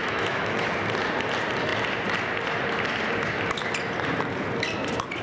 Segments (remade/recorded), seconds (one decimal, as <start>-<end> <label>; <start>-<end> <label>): 0.0-0.7 remade; 0.7-5.2 recorded

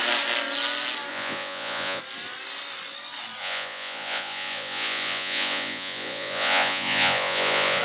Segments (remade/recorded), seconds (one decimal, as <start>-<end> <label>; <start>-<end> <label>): 0.0-1.1 recorded; 1.1-2.0 remade; 2.0-3.4 recorded; 3.4-7.8 remade

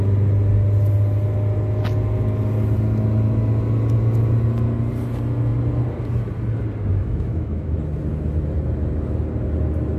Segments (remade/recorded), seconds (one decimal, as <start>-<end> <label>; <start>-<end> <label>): 0.0-6.9 recorded; 6.9-7.8 remade; 7.8-10.0 recorded